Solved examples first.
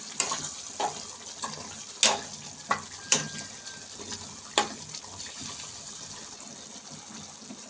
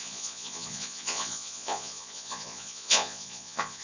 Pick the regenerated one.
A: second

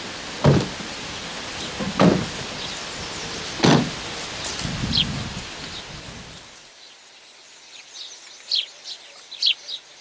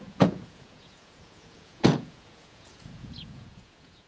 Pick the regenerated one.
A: second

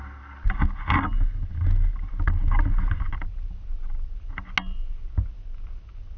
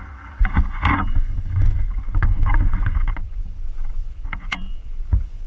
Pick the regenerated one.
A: second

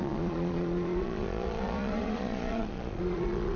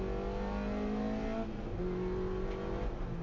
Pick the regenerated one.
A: first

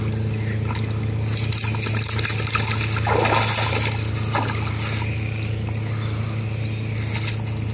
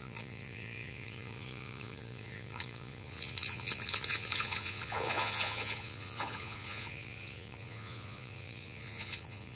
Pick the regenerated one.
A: second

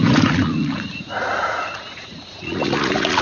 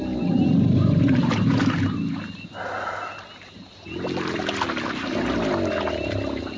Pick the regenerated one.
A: first